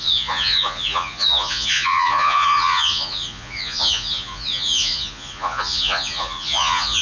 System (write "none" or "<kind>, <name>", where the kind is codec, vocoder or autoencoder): vocoder, Vocos